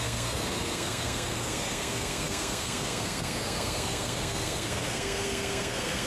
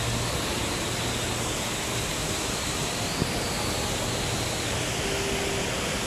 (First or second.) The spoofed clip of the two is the first